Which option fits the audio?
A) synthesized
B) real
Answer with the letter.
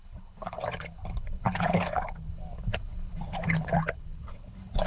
A